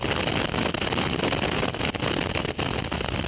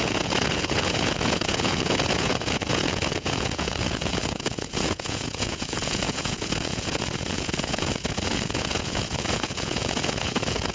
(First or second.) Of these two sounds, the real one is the first